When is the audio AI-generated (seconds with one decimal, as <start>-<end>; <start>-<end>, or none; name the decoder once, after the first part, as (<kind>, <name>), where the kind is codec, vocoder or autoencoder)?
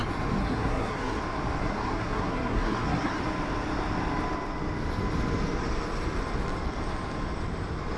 0.4-1.2 (codec, SNAC); 1.6-3.2